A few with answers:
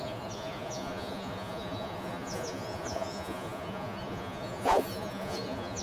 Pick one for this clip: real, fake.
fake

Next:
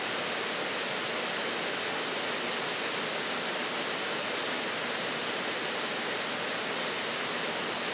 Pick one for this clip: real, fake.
real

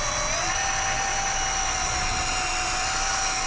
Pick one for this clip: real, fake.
real